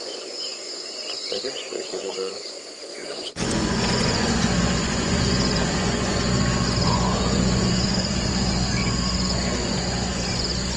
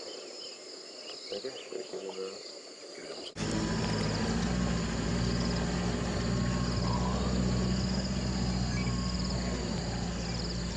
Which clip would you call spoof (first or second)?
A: first